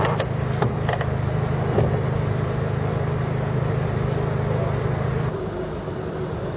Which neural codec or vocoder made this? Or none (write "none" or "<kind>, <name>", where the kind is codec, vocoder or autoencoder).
none